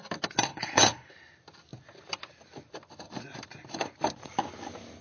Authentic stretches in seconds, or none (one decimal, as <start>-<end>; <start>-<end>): 0.0-0.5; 1.1-5.0